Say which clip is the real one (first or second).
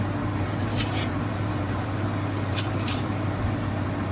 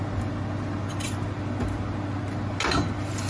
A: second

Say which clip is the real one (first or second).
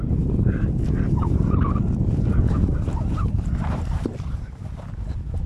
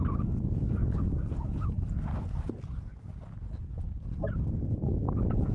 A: second